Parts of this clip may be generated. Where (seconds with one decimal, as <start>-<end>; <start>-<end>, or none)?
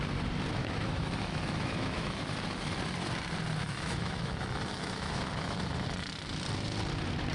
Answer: 0.6-2.2; 3.6-5.6